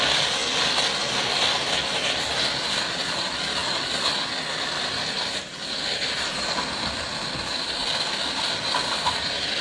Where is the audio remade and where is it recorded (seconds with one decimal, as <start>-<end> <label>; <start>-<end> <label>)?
0.0-0.4 remade; 0.4-2.4 recorded; 2.4-3.6 remade; 3.6-5.4 recorded; 5.4-7.8 remade; 7.8-8.4 recorded; 8.4-9.6 remade